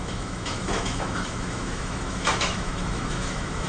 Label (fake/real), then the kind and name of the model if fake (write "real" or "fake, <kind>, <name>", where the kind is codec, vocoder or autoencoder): fake, autoencoder, DAC-VAE